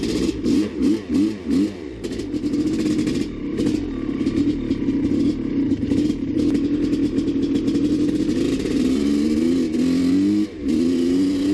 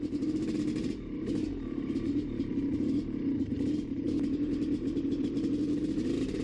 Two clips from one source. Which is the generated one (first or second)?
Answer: second